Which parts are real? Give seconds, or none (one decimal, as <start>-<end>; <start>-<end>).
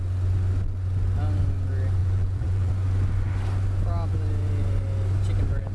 0.0-2.0; 2.7-5.7